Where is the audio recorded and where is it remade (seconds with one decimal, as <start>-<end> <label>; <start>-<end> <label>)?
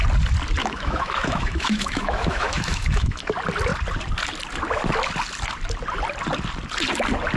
0.0-0.6 recorded; 0.6-3.2 remade; 3.2-7.4 recorded